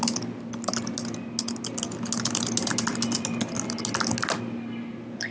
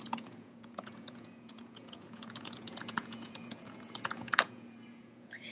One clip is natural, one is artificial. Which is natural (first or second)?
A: first